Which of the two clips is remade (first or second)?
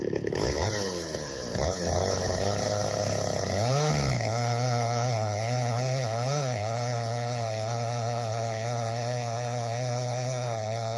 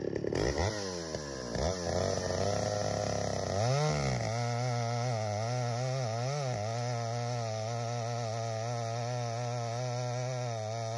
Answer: first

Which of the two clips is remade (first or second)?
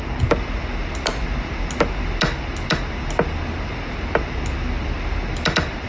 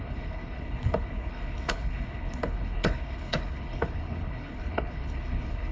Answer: second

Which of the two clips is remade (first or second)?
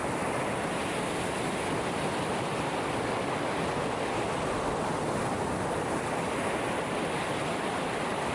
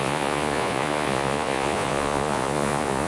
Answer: second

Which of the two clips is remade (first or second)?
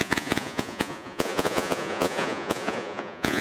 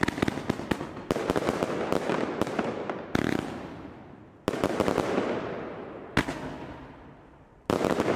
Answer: first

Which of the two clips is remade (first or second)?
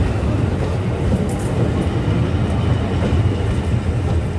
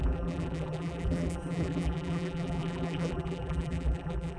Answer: second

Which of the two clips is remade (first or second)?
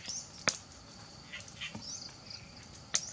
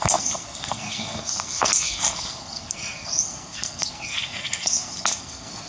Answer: second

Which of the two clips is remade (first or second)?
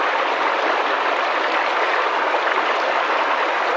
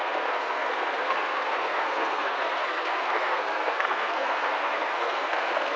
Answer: second